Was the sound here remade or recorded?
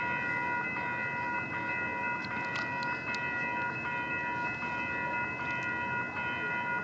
recorded